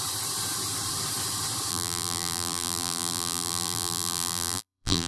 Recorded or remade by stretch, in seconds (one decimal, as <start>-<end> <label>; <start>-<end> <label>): 0.0-1.7 recorded; 1.7-5.1 remade